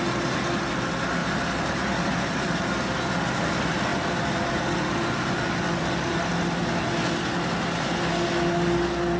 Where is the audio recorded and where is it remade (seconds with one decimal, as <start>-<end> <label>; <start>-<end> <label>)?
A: 0.0-1.2 recorded; 1.2-2.7 remade; 2.7-3.9 recorded; 3.9-4.6 remade; 4.6-9.2 recorded